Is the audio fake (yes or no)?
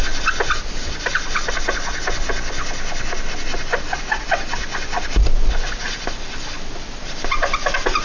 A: no